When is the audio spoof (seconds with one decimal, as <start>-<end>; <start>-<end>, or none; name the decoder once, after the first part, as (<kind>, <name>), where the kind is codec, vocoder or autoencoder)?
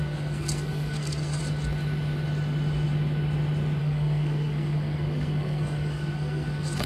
0.0-1.4 (codec, SNAC); 3.8-6.9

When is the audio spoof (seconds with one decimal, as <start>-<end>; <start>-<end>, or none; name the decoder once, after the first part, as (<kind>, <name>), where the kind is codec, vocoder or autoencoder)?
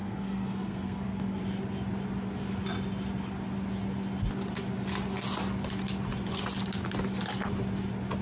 0.0-1.4 (codec, SNAC)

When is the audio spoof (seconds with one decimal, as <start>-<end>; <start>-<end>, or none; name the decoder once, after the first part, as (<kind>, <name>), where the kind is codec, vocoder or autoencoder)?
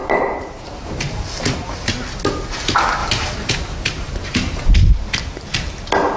0.0-1.9 (vocoder, BigVGAN v2); 3.0-4.7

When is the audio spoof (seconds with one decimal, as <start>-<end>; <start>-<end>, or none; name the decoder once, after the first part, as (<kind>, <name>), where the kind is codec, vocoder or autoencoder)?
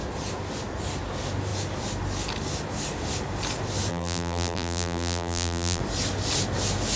3.9-5.8 (vocoder, BigVGAN v2)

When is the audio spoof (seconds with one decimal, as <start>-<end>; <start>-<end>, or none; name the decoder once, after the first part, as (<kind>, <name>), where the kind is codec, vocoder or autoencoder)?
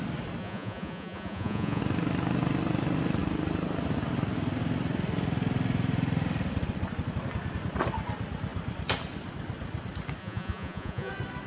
0.4-1.8 (vocoder, Vocos); 10.2-11.1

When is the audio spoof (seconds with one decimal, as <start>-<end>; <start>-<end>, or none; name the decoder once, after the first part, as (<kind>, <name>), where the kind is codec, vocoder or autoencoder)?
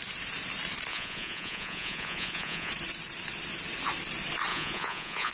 0.9-2.7 (vocoder, Vocos); 4.5-5.3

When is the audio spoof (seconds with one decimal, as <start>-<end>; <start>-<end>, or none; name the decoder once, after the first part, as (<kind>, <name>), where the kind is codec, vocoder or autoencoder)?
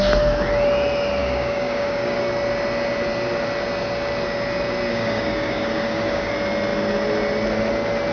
1.2-2.2 (codec, DAC); 4.9-6.3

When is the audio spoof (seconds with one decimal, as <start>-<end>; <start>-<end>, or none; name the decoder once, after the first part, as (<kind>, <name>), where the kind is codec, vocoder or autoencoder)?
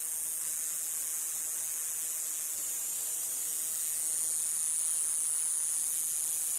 2.6-3.5 (vocoder, BigVGAN v2)